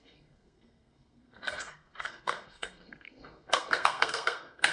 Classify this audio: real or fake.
fake